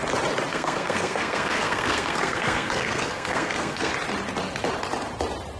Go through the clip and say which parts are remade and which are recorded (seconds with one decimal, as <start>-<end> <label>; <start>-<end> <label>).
0.0-0.5 recorded; 0.5-3.9 remade; 3.9-5.6 recorded